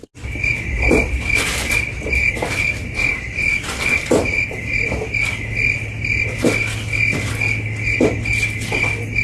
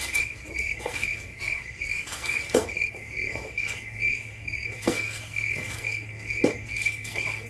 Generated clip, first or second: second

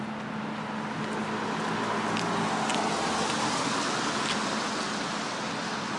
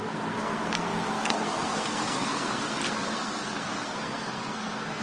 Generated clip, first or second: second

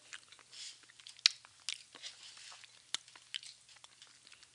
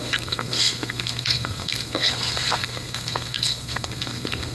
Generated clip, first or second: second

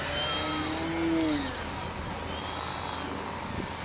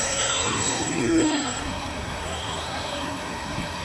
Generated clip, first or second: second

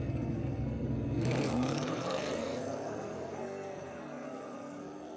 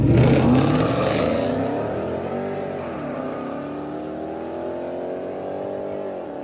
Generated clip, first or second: first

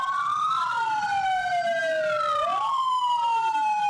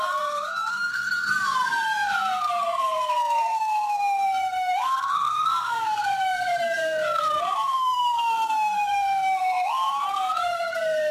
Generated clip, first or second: second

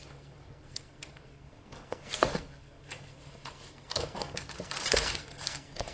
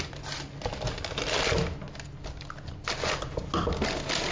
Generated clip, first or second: first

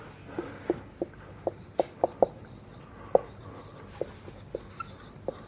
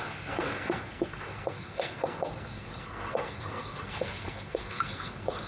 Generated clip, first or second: second